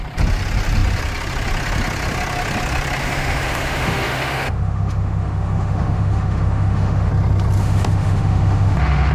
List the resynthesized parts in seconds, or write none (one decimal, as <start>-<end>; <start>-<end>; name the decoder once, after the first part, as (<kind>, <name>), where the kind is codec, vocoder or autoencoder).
3.0-7.1 (autoencoder, DAC-VAE); 7.6-9.1